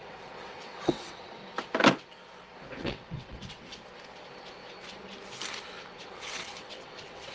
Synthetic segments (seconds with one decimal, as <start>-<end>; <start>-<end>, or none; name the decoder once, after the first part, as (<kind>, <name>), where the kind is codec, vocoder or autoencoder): 0.0-1.4 (vocoder, WaveNeXt); 2.8-3.7; 6.0-7.3